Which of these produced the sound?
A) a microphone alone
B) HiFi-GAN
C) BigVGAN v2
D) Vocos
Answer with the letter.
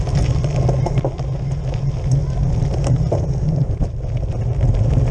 A